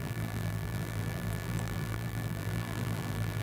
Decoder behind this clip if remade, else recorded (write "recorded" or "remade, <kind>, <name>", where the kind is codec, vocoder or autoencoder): remade, vocoder, BigVGAN v2